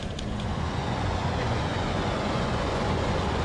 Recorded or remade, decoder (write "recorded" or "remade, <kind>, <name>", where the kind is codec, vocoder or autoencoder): remade, vocoder, Vocos